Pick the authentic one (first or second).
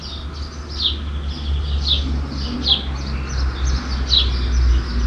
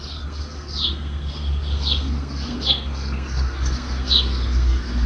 first